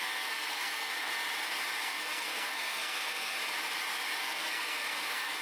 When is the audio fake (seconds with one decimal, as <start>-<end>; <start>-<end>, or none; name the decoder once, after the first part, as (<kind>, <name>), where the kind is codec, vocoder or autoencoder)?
0.0-1.1 (codec, SNAC); 1.8-3.4; 4.2-5.4